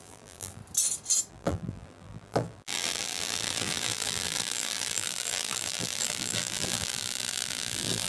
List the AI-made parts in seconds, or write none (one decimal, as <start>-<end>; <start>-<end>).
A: 0.0-0.6; 1.3-8.1